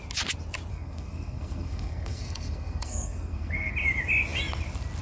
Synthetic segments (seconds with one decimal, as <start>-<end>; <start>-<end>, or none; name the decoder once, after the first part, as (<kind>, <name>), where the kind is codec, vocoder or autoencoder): 0.7-3.7 (codec, SNAC)